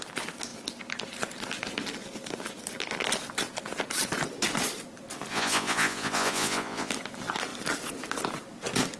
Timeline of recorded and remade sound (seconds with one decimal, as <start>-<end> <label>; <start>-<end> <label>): 0.0-5.3 recorded; 5.3-6.9 remade; 6.9-9.0 recorded